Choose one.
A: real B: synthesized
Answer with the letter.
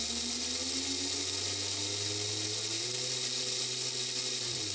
A